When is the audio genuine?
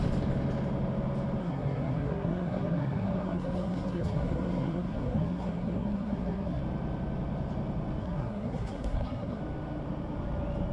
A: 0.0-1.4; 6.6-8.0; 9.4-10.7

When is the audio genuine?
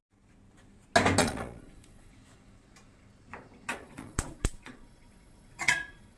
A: 0.0-1.2; 2.1-3.7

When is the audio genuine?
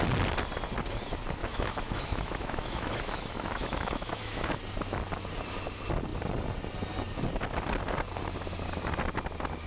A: 0.0-1.4; 4.6-9.7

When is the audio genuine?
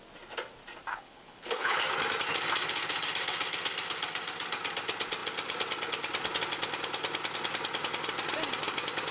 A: 0.0-0.9; 1.8-9.1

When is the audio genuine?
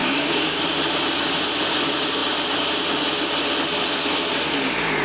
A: 0.6-5.0